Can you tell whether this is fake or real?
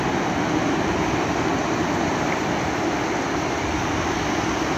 real